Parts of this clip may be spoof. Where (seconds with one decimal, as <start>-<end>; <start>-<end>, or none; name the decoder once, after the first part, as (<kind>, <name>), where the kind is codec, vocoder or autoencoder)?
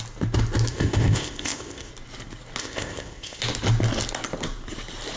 0.7-1.9 (codec, ZipCodec); 2.6-3.4